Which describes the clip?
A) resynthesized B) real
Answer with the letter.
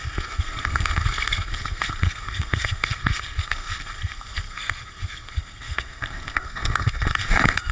A